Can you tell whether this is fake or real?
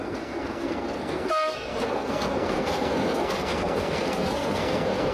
fake